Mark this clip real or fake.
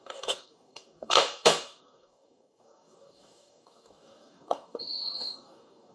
fake